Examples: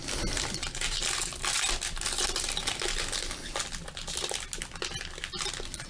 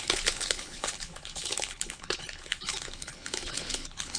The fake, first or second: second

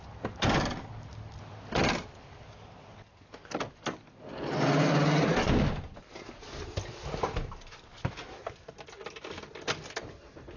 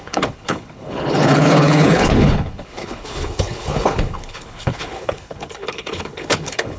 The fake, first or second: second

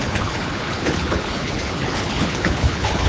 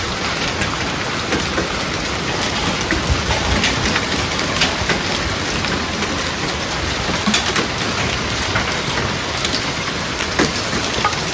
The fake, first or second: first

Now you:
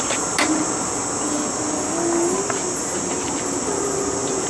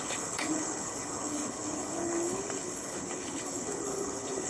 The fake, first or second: second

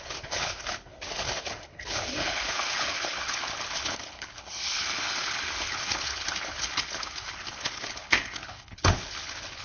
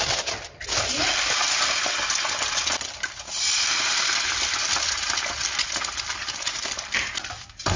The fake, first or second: first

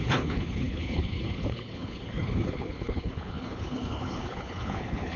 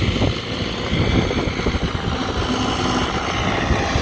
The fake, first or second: first